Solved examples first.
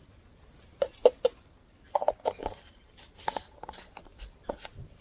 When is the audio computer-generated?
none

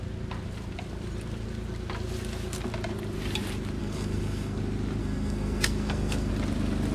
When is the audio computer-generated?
3.8-4.6 (codec, SNAC); 5.0-6.3